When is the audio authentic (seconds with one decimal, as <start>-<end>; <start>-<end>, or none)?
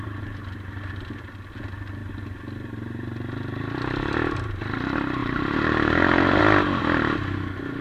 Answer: 0.0-5.2; 6.4-7.8